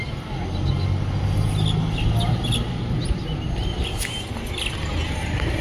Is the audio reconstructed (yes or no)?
no